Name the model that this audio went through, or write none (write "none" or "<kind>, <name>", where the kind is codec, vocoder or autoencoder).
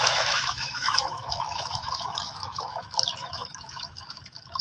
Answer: autoencoder, DAC-VAE